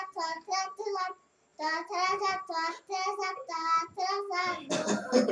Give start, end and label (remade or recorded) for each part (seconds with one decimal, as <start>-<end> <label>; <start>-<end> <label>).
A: 0.0-5.3 recorded